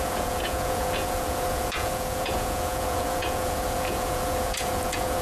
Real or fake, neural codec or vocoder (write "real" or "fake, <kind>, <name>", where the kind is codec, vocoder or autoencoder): fake, vocoder, Vocos